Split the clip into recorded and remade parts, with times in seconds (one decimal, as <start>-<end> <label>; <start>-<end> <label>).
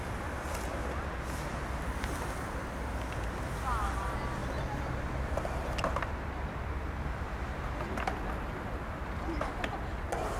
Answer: 0.0-4.4 recorded; 4.4-8.1 remade; 8.1-10.4 recorded